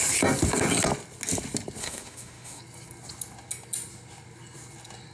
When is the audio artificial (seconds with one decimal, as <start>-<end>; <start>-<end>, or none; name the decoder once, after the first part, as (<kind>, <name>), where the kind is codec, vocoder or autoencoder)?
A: 1.8-2.6 (autoencoder, DAC-VAE)